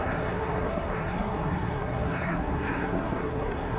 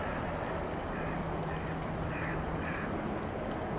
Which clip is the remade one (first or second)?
first